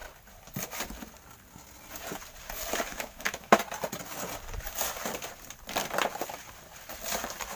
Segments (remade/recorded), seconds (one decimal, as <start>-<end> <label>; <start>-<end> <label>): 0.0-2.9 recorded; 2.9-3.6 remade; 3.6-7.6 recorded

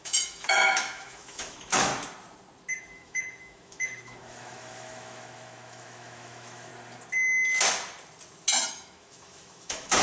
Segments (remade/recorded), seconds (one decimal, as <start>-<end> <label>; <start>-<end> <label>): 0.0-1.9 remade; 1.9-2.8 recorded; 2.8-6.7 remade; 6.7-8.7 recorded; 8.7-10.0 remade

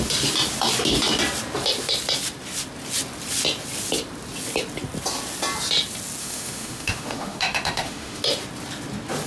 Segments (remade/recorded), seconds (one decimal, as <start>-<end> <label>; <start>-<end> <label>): 0.0-6.2 recorded; 6.2-8.2 remade; 8.2-9.3 recorded

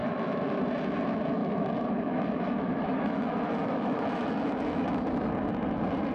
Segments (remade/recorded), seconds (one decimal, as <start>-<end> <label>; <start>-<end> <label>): 0.0-0.6 remade; 0.6-1.4 recorded; 1.4-5.1 remade; 5.1-6.1 recorded

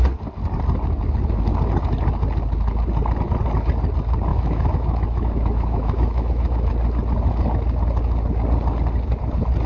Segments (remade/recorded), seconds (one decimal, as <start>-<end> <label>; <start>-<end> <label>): 0.0-4.3 recorded; 4.3-6.7 remade; 6.7-9.7 recorded

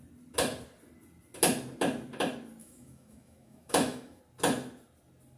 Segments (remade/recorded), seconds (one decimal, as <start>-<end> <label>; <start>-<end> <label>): 0.0-2.6 recorded; 2.6-4.2 remade; 4.2-5.4 recorded